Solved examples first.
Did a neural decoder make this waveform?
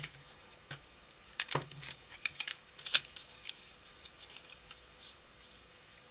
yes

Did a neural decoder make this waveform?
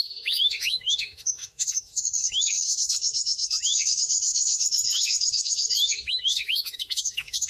yes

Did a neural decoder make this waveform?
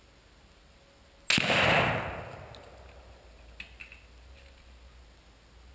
no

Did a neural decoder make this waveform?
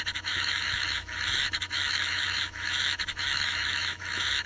yes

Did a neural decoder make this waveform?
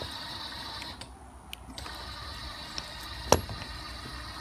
no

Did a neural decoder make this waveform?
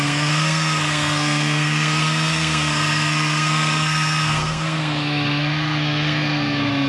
yes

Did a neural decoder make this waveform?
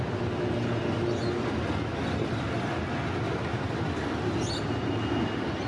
no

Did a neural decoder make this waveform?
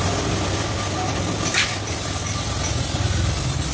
no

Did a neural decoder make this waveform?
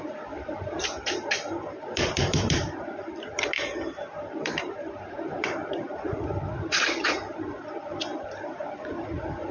yes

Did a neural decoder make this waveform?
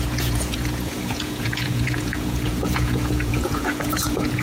yes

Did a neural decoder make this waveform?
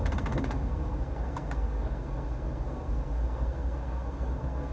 yes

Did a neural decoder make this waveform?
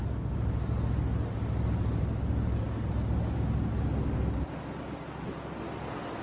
no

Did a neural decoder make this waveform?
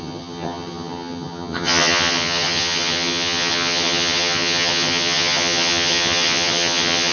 yes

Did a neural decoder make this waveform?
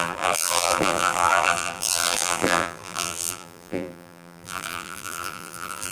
yes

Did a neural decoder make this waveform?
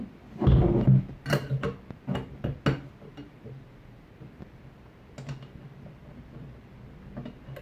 no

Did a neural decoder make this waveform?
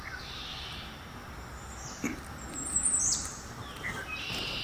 yes